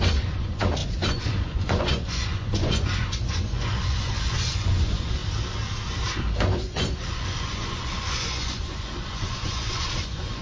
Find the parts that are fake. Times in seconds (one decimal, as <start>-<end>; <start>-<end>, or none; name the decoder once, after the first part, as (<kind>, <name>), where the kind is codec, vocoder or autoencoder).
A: 0.0-5.2 (vocoder, Vocos); 6.3-10.4